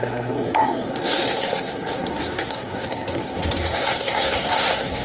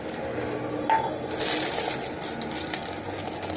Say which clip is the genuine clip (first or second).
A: second